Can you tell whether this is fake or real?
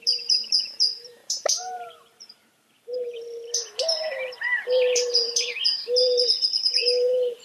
fake